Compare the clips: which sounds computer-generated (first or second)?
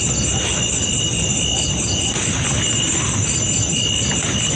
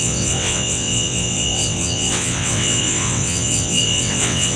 second